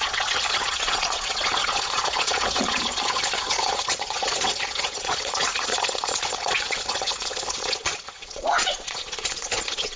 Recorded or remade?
remade